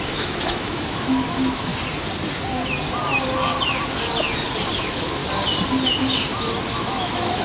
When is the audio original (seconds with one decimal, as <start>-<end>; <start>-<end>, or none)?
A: 1.7-4.7; 5.2-6.7

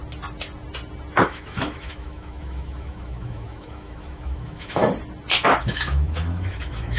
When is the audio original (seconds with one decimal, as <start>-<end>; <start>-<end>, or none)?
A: 0.0-1.2; 4.8-5.6